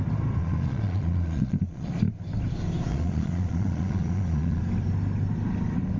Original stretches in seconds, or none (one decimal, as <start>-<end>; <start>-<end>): 0.0-0.4; 1.9-2.9; 4.6-6.0